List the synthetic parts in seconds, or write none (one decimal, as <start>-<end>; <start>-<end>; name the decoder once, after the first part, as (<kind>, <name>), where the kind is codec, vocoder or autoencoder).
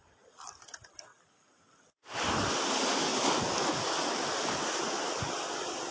none